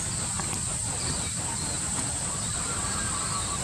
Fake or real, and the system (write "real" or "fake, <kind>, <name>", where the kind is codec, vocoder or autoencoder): real